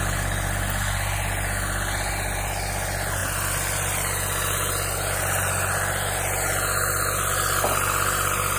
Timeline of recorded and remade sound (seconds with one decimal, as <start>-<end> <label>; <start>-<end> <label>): 0.0-8.6 recorded